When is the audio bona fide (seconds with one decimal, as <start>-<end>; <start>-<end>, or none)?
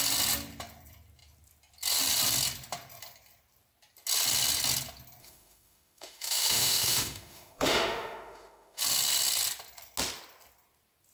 0.0-5.2; 8.8-11.1